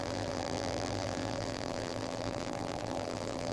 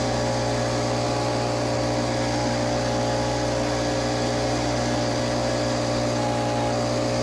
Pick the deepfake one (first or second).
first